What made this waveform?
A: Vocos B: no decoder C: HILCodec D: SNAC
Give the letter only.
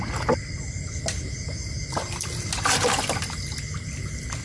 B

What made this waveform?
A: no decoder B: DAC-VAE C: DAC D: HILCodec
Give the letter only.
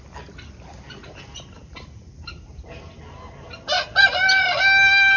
A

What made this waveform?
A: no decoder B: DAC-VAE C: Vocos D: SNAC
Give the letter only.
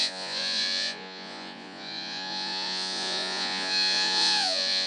C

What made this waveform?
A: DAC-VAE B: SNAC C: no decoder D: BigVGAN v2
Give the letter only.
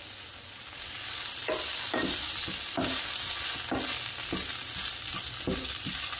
C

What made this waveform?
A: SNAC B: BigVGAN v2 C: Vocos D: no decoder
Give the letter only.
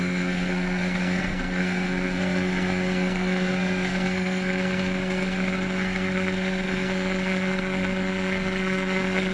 A